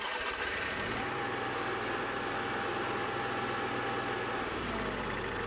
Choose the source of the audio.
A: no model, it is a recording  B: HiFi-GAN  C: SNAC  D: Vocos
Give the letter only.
A